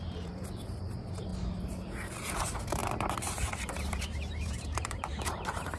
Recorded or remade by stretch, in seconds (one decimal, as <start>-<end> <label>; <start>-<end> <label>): 0.0-1.3 remade; 1.3-2.4 recorded; 2.4-2.8 remade; 2.8-3.7 recorded; 3.7-5.8 remade